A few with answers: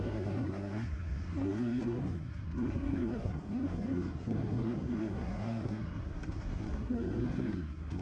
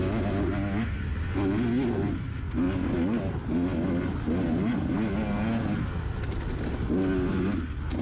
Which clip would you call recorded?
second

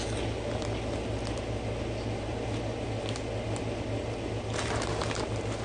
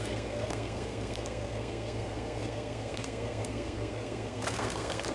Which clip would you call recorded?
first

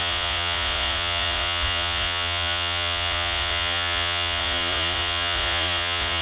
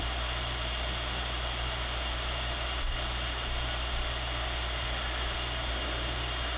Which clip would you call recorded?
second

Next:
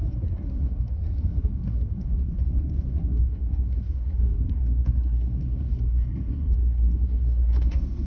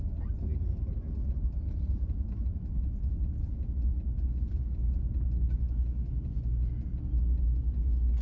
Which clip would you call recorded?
second